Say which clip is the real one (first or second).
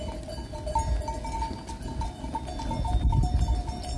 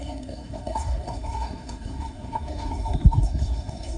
first